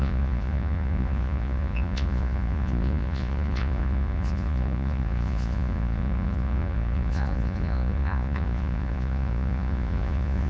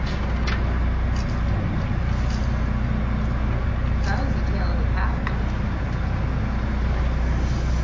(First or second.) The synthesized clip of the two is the first